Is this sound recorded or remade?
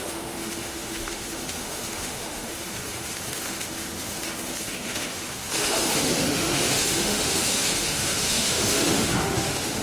remade